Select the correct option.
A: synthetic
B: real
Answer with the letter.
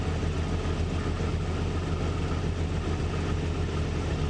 B